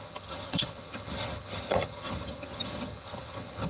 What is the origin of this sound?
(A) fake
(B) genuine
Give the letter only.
A